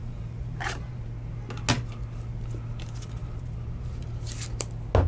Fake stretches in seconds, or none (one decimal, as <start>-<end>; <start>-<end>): 0.0-1.0; 3.2-4.0